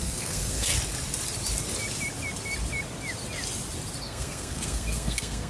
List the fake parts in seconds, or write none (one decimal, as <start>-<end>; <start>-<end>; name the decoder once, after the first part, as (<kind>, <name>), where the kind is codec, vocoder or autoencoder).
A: 0.0-0.7 (codec, SNAC); 4.0-5.5